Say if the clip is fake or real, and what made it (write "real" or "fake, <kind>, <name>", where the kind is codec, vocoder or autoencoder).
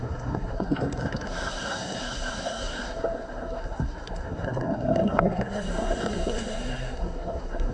fake, codec, SNAC